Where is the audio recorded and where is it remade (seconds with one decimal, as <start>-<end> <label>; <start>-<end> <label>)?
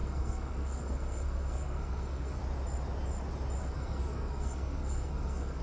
0.0-2.4 remade; 2.4-3.6 recorded; 3.6-5.6 remade